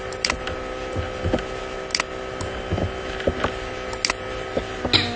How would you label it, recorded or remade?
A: recorded